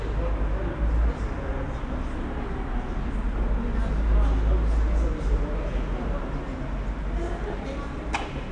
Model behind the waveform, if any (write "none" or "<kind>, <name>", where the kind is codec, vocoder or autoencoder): none